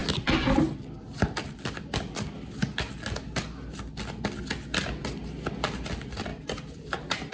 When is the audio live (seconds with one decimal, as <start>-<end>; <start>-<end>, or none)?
0.0-6.3